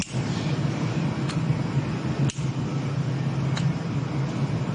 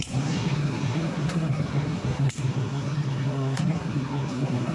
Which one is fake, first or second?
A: second